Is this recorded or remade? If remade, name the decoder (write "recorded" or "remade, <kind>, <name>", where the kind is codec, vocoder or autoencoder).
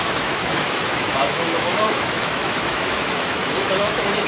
remade, autoencoder, DAC-VAE